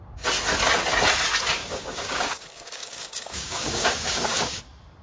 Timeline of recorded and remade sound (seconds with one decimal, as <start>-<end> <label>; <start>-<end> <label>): 0.0-1.6 recorded; 1.6-4.6 remade; 4.6-5.0 recorded